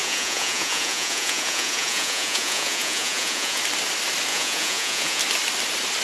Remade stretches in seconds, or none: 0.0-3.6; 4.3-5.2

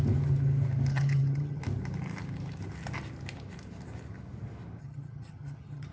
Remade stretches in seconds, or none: 0.9-1.6; 4.8-5.9

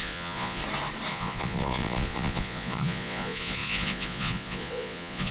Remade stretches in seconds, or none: 0.0-0.6; 1.1-5.3